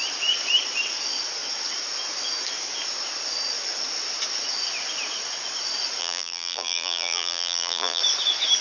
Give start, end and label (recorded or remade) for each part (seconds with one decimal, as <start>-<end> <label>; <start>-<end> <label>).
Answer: 0.0-6.0 recorded; 6.0-8.0 remade; 8.0-8.6 recorded